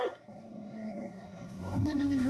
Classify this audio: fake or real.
fake